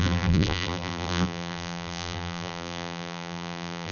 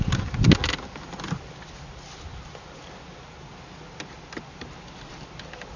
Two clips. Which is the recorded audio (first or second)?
second